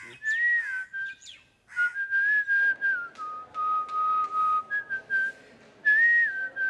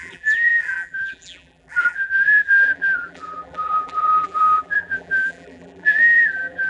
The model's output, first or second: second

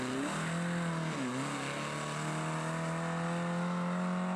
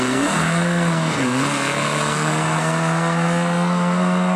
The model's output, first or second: second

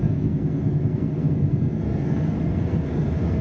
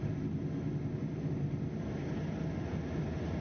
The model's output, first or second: first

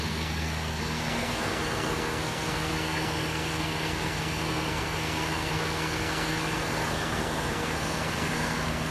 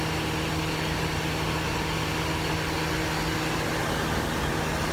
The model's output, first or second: first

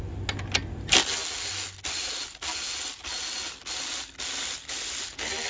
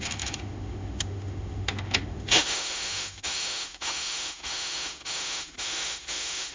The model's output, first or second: second